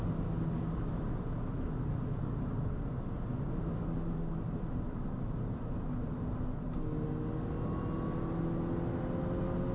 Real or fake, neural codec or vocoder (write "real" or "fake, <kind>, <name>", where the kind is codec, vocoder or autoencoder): real